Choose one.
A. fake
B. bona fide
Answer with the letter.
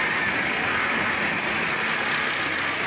B